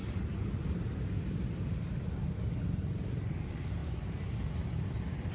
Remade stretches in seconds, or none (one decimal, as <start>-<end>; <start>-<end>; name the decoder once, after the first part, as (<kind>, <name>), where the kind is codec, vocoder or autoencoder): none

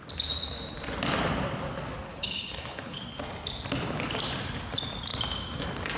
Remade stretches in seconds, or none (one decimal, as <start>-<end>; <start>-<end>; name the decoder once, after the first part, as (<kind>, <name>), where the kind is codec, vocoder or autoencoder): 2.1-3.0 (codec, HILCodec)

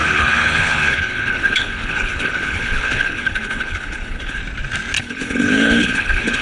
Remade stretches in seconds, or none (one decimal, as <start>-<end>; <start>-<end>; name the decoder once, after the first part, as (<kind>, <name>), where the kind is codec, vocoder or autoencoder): 0.0-4.4 (codec, HILCodec); 5.0-6.4